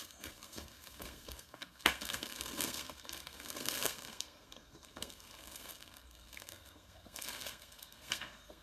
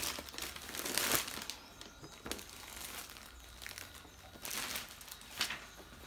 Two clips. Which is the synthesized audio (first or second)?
first